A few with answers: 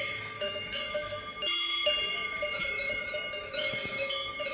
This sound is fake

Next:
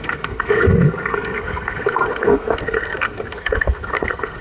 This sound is fake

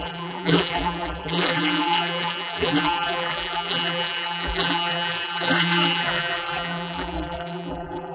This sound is fake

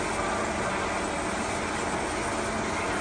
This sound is real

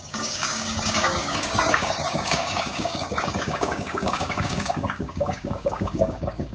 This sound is fake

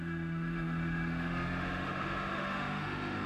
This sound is fake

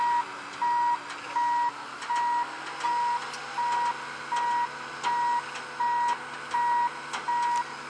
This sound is real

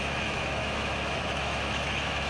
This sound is fake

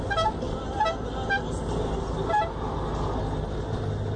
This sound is real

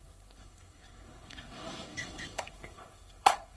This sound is fake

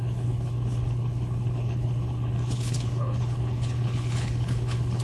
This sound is fake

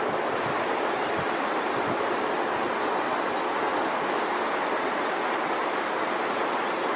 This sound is real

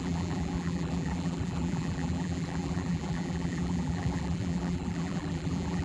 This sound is fake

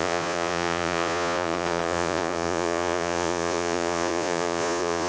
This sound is fake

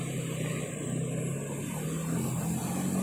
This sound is real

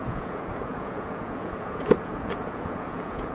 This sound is fake